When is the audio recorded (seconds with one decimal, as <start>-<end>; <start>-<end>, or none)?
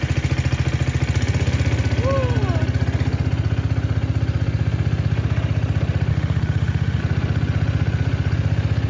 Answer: 0.0-6.1; 7.0-8.9